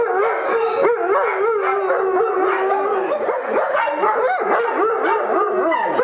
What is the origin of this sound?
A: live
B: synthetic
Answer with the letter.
A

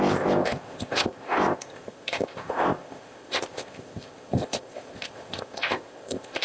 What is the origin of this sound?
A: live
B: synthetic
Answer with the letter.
B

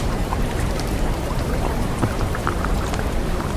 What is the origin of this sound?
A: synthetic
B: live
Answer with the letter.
A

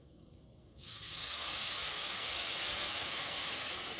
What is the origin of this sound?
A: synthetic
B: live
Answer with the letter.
A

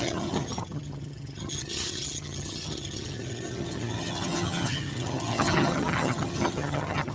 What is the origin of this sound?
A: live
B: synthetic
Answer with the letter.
B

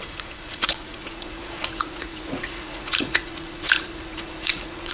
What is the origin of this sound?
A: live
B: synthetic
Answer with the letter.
B